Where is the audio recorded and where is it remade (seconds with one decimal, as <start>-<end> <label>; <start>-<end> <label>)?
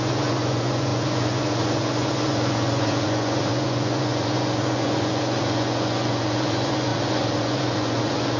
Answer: 0.0-8.4 remade